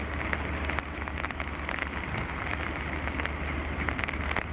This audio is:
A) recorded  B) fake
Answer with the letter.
A